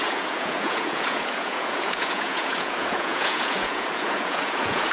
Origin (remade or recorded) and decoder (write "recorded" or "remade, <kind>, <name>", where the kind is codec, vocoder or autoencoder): remade, vocoder, Vocos